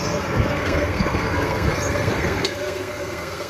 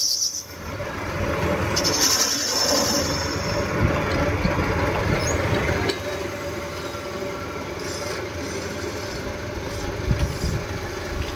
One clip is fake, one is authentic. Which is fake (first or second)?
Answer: first